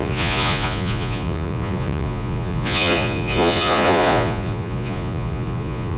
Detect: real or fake fake